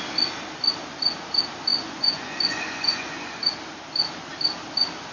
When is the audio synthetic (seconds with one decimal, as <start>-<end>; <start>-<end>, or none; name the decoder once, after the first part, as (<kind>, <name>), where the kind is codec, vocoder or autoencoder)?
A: 1.7-3.4 (vocoder, Vocos)